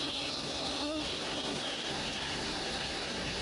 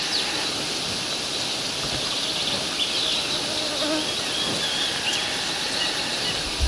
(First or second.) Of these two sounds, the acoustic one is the second